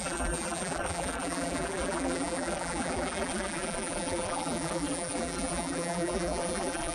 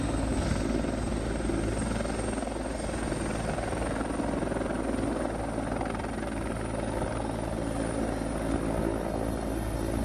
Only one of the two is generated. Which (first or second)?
first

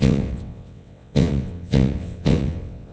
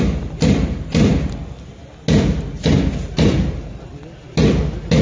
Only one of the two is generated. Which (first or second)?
first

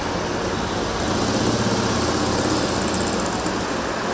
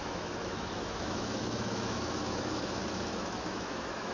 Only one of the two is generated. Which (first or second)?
second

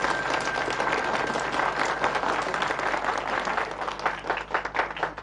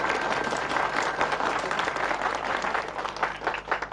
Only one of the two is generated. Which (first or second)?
second